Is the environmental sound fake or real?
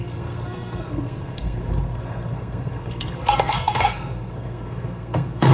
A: fake